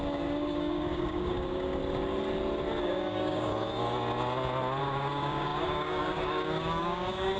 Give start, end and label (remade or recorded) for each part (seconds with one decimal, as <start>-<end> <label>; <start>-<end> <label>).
0.0-1.8 remade; 1.8-2.8 recorded; 2.8-3.5 remade; 3.5-4.8 recorded; 4.8-7.4 remade